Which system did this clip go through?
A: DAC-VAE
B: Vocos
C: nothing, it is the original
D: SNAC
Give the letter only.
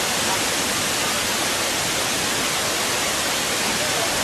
C